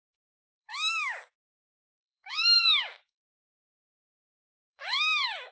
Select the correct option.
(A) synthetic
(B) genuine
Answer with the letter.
A